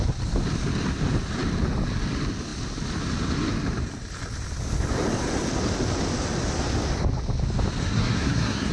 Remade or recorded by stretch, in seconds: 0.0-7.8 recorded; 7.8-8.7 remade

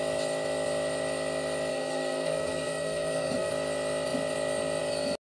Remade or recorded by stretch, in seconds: 0.0-1.7 recorded; 1.7-3.5 remade; 3.5-5.2 recorded

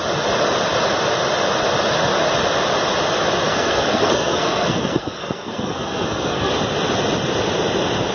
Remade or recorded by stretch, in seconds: 0.0-3.5 recorded; 3.5-6.5 remade; 6.5-8.1 recorded

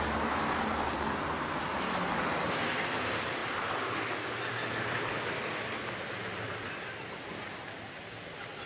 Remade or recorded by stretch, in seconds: 0.0-8.7 recorded